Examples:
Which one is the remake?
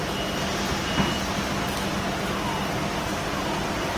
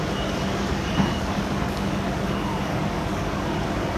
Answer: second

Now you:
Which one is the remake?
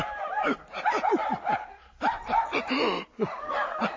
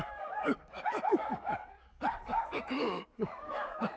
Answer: second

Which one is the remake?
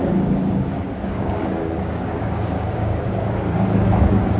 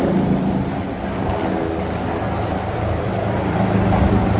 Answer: first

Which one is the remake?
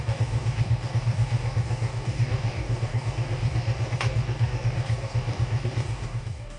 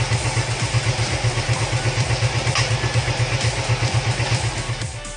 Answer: first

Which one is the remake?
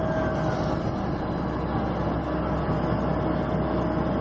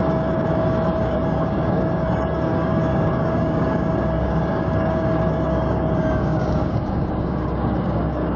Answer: second